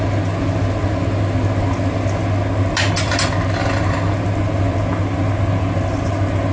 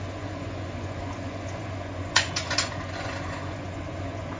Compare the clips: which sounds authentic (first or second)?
first